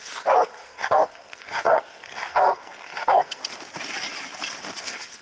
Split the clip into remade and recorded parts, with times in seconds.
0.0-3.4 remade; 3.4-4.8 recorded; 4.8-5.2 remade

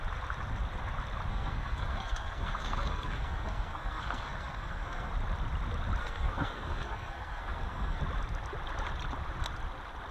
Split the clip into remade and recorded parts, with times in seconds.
0.0-1.3 recorded; 1.3-5.1 remade; 5.1-6.0 recorded; 6.0-8.0 remade; 8.0-10.1 recorded

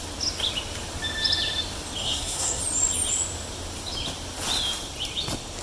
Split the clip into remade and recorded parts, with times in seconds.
0.0-2.0 recorded; 2.0-2.6 remade; 2.6-5.6 recorded